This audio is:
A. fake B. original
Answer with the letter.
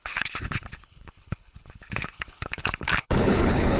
A